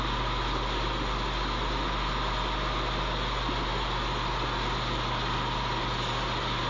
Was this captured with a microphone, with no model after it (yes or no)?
yes